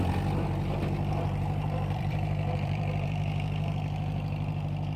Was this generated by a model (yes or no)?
yes